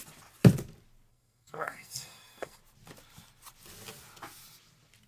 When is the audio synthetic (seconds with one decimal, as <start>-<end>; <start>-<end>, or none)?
1.1-2.6